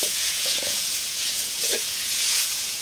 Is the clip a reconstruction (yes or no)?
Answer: yes